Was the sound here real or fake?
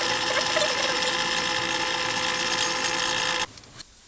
real